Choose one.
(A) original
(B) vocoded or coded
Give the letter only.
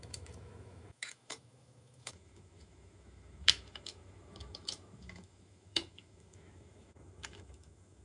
B